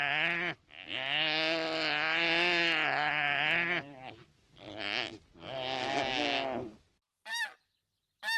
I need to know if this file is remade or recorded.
recorded